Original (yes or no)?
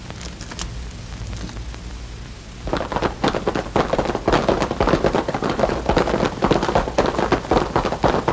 yes